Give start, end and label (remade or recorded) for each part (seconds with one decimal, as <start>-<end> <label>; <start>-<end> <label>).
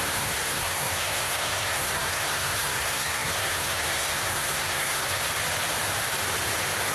0.0-5.2 remade; 5.2-6.9 recorded